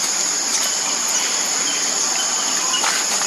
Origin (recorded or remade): recorded